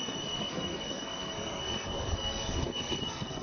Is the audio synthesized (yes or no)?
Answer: yes